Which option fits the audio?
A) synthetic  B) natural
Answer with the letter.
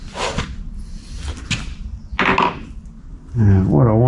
B